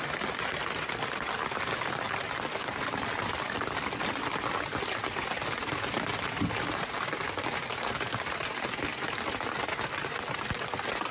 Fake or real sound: real